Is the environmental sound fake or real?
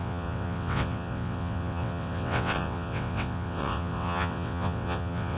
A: fake